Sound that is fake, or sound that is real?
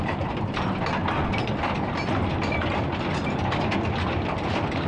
real